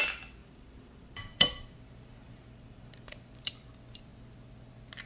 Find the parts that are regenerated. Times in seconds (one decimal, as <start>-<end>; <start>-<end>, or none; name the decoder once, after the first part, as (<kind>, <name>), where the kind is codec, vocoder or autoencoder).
0.4-3.5 (vocoder, BigVGAN v2)